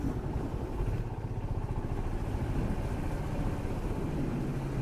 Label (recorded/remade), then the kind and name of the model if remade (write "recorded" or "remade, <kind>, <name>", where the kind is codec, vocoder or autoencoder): recorded